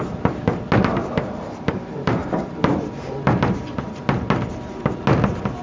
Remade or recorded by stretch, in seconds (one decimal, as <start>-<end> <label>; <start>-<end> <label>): 0.0-0.9 recorded; 0.9-3.9 remade; 3.9-5.6 recorded